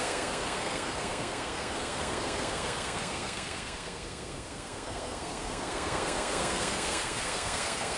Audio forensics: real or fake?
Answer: fake